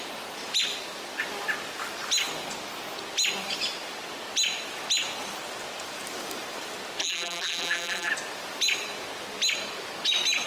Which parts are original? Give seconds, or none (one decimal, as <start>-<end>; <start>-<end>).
0.0-7.0; 8.1-10.5